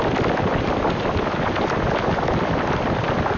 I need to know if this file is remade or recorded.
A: recorded